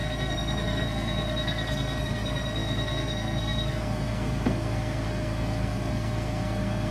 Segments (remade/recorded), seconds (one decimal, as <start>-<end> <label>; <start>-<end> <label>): 0.0-6.9 remade